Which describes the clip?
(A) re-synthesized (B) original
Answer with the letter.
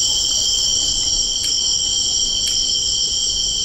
A